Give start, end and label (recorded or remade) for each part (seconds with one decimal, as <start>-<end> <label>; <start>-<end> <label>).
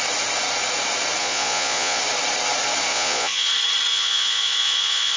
0.0-1.2 recorded; 1.2-2.0 remade; 2.0-2.9 recorded; 2.9-3.5 remade; 3.5-3.9 recorded; 3.9-5.2 remade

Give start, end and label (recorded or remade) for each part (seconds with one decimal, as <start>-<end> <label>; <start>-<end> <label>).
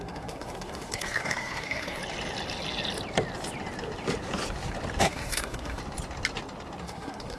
0.0-2.0 remade; 2.0-5.0 recorded; 5.0-5.8 remade; 5.8-6.8 recorded; 6.8-7.4 remade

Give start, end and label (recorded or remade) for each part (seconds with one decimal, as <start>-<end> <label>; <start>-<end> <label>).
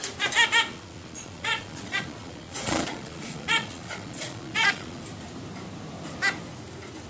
0.0-0.7 recorded; 0.7-5.0 remade; 5.0-7.1 recorded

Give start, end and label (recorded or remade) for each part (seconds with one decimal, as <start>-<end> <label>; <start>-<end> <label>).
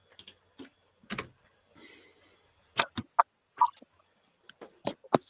0.0-5.3 recorded